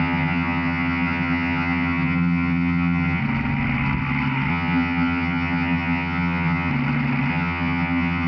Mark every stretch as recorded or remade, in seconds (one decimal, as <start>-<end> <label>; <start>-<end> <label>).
0.0-3.2 remade; 3.2-4.5 recorded; 4.5-6.7 remade; 6.7-7.3 recorded; 7.3-8.3 remade